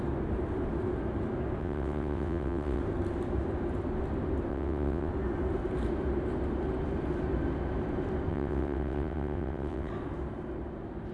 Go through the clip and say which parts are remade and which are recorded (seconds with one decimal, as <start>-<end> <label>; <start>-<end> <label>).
0.0-1.6 recorded; 1.6-2.8 remade; 2.8-4.5 recorded; 4.5-5.1 remade; 5.1-8.3 recorded; 8.3-9.9 remade; 9.9-11.1 recorded